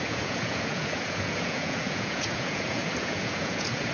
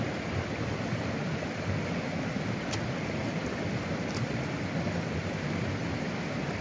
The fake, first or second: first